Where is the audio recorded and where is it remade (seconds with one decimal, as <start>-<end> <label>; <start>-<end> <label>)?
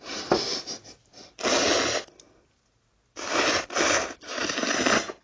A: 0.0-5.2 recorded